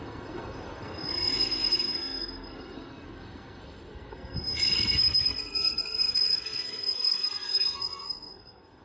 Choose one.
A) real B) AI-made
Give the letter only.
B